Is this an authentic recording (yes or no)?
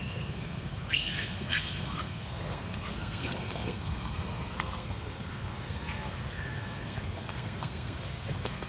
no